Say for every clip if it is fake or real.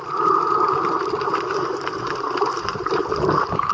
real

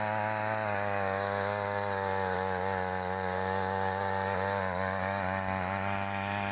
real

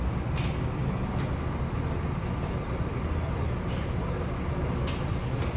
real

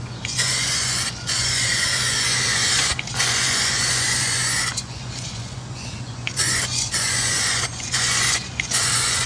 fake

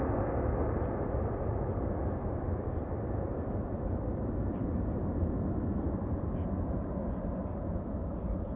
real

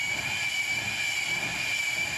real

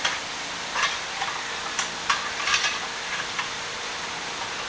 real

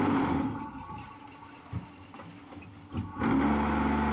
real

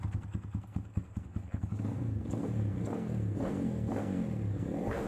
fake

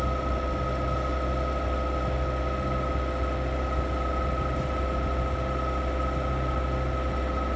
real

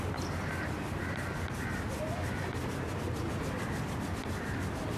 fake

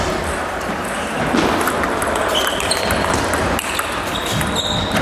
real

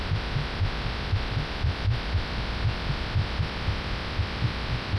real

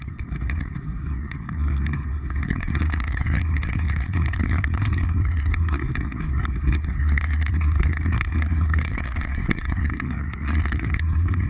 fake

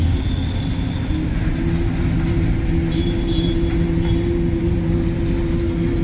real